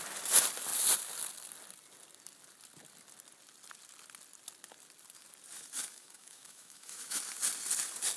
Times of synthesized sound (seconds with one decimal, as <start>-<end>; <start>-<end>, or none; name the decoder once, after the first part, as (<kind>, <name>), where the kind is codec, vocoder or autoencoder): 5.9-7.2 (autoencoder, DAC-VAE)